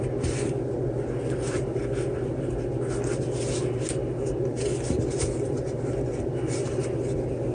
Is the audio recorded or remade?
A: recorded